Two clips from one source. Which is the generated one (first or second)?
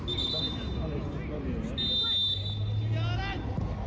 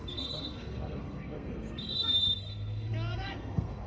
second